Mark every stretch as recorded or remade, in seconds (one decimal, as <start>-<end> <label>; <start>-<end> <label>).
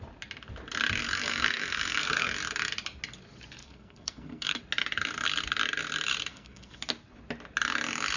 0.0-1.0 recorded; 1.0-2.3 remade; 2.3-3.6 recorded; 3.6-4.6 remade; 4.6-6.3 recorded; 6.3-6.8 remade; 6.8-8.2 recorded